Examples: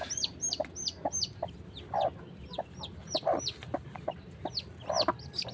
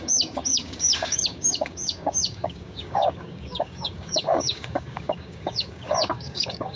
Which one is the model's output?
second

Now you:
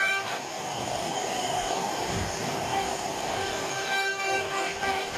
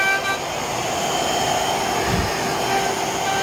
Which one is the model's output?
first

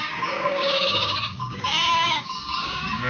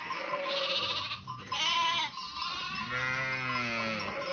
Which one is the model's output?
first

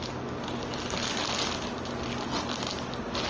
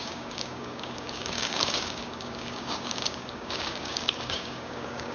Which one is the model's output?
second